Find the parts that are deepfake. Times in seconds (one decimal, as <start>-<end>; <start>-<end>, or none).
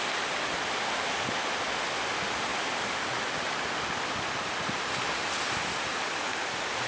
none